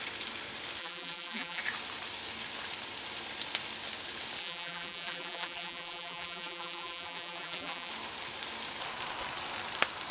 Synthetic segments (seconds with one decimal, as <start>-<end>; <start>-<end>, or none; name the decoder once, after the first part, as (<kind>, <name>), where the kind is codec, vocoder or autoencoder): 0.8-1.6 (vocoder, BigVGAN v2); 4.4-7.9